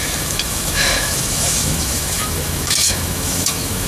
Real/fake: fake